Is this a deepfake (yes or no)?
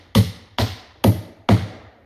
no